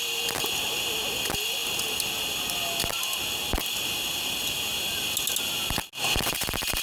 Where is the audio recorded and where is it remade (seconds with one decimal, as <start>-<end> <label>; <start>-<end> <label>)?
0.0-6.8 recorded